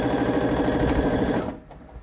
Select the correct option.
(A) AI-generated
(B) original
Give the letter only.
B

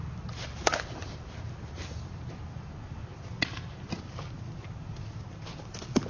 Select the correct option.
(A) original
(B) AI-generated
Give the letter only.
A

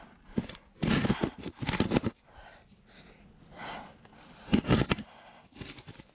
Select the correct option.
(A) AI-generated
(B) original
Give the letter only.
B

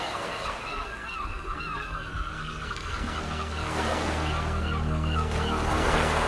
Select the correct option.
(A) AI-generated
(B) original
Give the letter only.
A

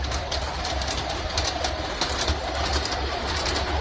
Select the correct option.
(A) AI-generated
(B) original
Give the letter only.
B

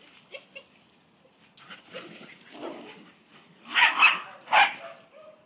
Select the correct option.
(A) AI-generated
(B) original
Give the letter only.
B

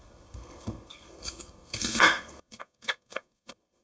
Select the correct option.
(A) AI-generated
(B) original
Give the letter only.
A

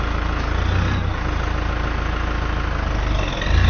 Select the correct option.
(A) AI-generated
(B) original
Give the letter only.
B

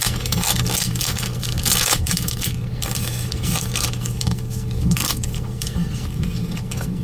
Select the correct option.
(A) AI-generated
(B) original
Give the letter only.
A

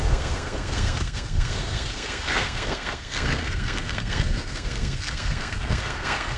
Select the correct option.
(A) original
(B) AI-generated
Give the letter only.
B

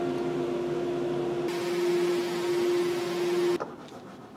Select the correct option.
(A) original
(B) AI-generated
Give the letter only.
A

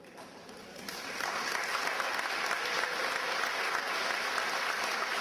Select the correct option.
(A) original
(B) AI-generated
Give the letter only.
A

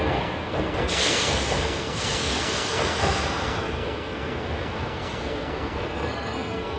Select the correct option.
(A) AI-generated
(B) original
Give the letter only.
A